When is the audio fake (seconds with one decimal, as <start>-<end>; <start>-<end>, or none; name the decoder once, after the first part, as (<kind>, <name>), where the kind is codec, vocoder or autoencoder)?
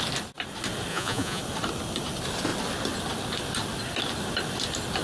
0.9-1.4 (vocoder, Vocos)